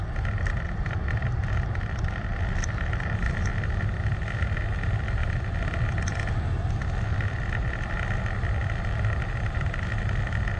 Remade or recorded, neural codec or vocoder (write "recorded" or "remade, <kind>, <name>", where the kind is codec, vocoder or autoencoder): recorded